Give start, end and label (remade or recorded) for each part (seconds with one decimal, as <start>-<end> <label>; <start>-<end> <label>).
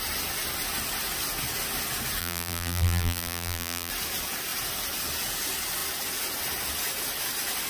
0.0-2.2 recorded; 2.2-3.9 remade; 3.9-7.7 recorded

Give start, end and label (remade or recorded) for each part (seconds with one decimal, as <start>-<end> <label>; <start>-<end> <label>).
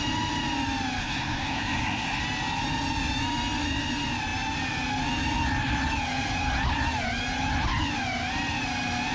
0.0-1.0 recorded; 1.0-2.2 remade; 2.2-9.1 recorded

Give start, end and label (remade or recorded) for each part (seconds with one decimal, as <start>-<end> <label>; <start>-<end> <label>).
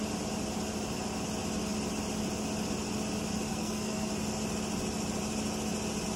0.0-3.5 recorded; 3.5-4.1 remade; 4.1-6.2 recorded